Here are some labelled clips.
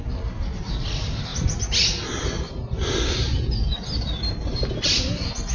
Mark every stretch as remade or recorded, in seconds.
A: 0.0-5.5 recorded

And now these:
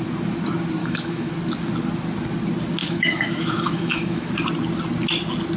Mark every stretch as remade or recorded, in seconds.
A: 0.0-0.8 recorded; 0.8-1.3 remade; 1.3-2.8 recorded; 2.8-4.3 remade; 4.3-5.6 recorded

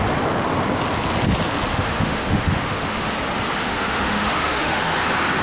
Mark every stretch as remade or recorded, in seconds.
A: 0.0-1.7 recorded; 1.7-3.1 remade; 3.1-3.6 recorded; 3.6-4.8 remade; 4.8-5.4 recorded

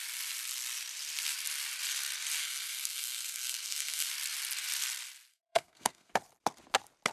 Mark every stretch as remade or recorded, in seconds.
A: 0.0-2.4 recorded; 2.4-4.1 remade; 4.1-5.3 recorded; 5.3-6.1 remade; 6.1-7.1 recorded

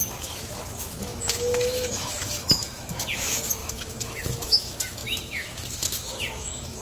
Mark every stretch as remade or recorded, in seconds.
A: 0.0-6.8 remade

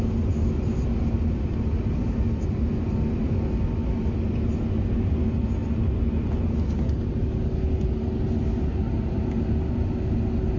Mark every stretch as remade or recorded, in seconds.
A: 0.0-10.6 recorded

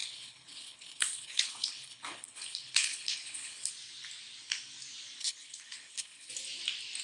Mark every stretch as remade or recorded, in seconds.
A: 0.0-3.7 remade; 3.7-5.2 recorded; 5.2-6.3 remade; 6.3-7.0 recorded